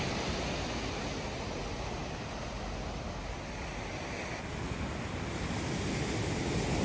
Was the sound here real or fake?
real